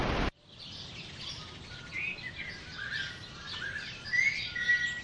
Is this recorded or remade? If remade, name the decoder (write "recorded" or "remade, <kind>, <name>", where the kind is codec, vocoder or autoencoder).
recorded